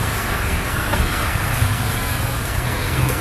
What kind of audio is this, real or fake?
fake